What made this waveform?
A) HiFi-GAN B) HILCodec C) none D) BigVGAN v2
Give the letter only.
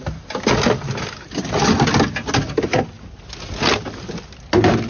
C